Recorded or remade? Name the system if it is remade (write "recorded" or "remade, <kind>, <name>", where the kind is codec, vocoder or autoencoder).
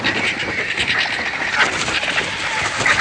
recorded